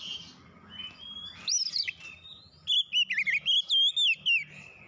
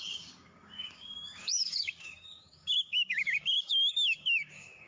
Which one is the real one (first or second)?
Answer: first